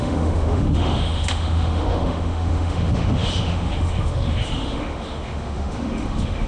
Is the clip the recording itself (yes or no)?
no